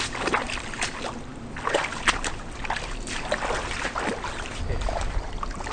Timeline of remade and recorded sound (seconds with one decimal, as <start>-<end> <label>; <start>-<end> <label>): 0.0-5.7 recorded